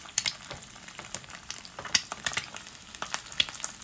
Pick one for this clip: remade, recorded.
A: remade